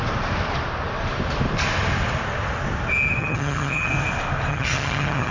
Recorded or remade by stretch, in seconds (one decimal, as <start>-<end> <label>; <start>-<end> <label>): 0.0-3.2 recorded; 3.2-3.9 remade; 3.9-4.5 recorded; 4.5-5.3 remade